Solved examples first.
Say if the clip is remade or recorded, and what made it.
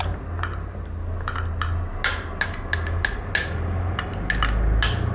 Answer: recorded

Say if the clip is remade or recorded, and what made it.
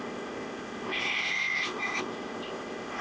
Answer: remade, codec, ZipCodec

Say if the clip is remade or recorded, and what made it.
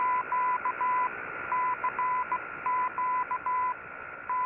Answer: recorded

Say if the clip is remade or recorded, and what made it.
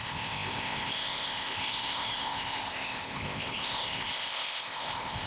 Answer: remade, codec, ZipCodec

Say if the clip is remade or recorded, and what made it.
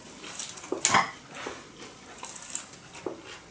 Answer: recorded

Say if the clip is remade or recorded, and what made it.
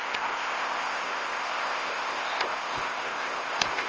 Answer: remade, codec, ZipCodec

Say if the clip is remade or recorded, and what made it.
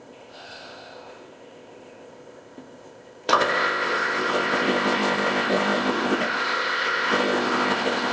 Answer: remade, codec, ZipCodec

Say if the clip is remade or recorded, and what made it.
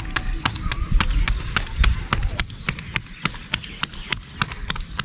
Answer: recorded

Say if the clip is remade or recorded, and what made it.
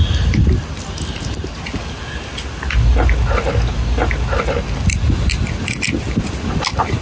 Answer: recorded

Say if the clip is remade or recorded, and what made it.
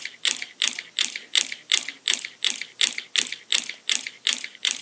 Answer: recorded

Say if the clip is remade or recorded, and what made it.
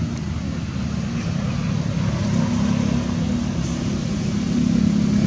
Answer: recorded